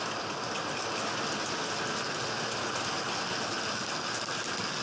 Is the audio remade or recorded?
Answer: recorded